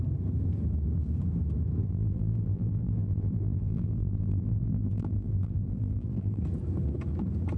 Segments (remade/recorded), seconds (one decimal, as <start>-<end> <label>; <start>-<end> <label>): 0.0-1.8 recorded; 1.8-6.4 remade; 6.4-7.6 recorded